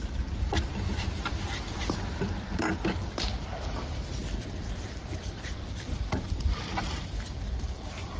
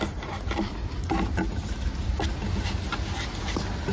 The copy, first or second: first